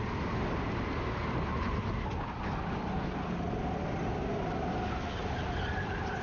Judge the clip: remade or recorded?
recorded